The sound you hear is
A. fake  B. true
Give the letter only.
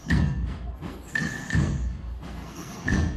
A